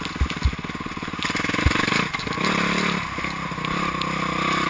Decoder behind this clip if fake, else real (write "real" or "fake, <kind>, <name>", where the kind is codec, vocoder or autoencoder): real